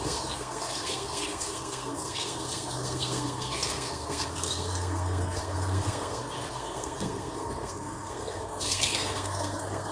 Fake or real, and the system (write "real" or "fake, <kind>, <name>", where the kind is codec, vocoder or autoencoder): fake, codec, SNAC